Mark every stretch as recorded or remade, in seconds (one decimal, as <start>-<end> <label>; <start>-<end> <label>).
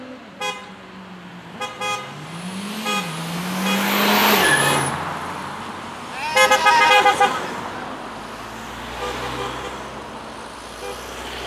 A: 0.0-11.5 recorded